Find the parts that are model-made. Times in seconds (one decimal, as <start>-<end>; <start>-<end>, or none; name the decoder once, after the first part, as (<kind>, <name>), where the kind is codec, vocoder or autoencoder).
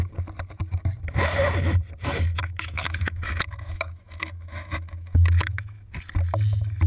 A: 2.4-5.8 (autoencoder, DAC-VAE)